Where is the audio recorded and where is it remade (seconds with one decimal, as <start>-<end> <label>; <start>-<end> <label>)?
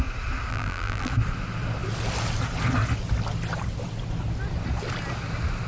0.0-0.5 recorded; 0.5-1.1 remade; 1.1-5.7 recorded